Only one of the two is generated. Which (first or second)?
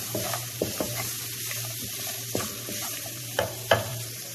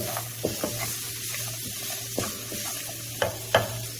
first